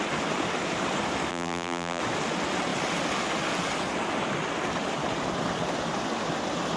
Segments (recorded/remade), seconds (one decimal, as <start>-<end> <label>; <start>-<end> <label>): 0.0-1.3 recorded; 1.3-2.0 remade; 2.0-6.8 recorded